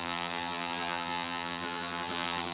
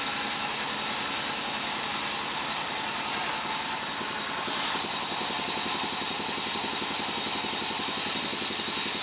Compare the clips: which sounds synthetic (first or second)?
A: first